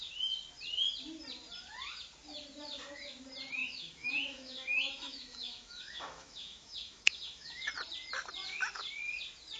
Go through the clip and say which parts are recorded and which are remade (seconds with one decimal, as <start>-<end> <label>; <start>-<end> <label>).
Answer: 0.0-3.6 recorded; 3.6-7.7 remade; 7.7-9.6 recorded